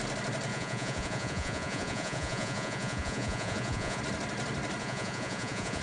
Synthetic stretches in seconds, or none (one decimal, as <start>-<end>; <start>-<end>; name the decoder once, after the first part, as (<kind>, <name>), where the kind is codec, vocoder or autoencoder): 0.5-4.0 (vocoder, Vocos); 4.8-5.8